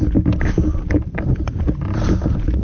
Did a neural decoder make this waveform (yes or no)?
no